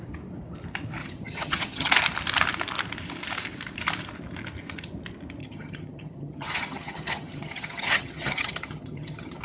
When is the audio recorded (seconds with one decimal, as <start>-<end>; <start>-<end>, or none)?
0.0-1.0; 1.9-5.4